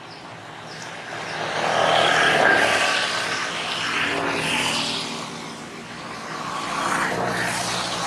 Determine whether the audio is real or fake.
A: real